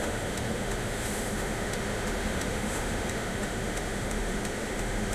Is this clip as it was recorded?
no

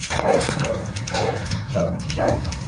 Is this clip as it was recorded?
no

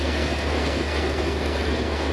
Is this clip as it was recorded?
no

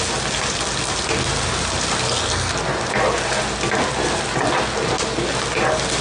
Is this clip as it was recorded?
yes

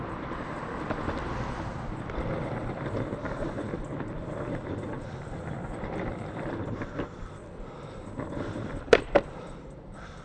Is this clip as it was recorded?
no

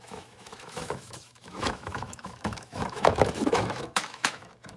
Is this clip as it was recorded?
no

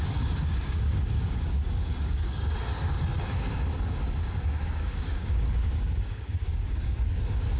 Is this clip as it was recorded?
no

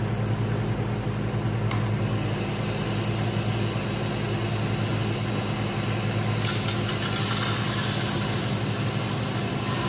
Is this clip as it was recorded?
yes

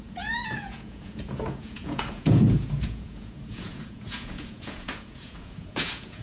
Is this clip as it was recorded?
no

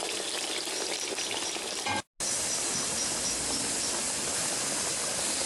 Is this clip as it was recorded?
yes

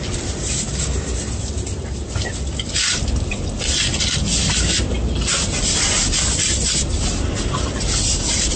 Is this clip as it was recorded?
yes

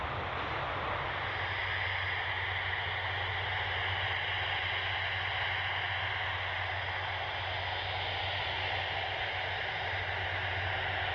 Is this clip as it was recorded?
yes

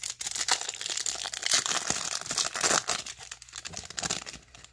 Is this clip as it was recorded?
yes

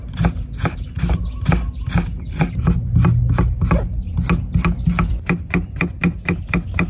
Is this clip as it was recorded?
yes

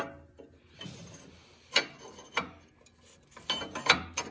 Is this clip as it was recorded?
yes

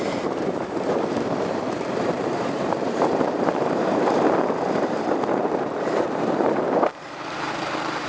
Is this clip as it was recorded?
no